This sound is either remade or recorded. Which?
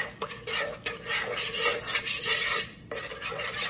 recorded